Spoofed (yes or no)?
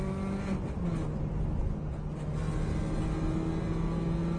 no